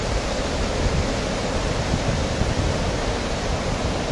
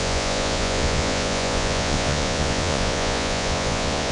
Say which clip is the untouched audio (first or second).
first